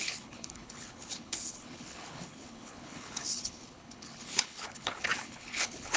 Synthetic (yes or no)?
yes